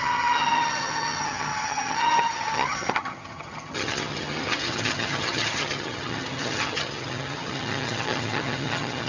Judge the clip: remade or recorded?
remade